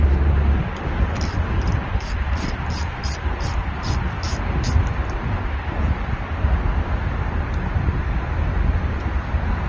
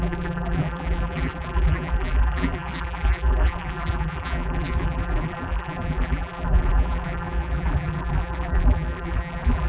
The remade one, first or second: second